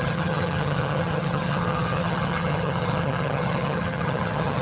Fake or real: fake